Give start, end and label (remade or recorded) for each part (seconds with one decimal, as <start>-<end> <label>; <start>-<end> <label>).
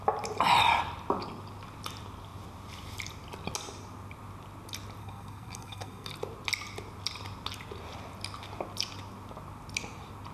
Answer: 0.0-5.0 recorded; 5.0-6.1 remade; 6.1-10.3 recorded